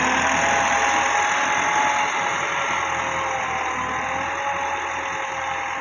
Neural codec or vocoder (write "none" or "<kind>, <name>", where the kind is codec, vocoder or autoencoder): none